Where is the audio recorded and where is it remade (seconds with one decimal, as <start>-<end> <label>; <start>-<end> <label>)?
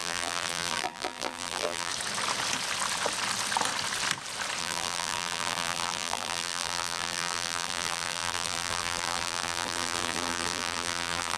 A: 0.0-1.9 remade; 1.9-4.6 recorded; 4.6-11.4 remade